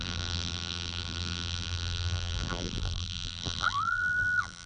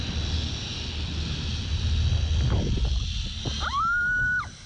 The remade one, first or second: first